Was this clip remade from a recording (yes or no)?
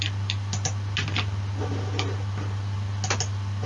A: no